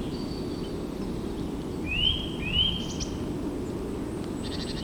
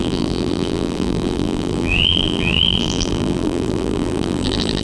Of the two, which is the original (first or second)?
first